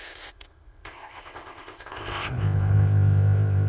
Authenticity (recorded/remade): remade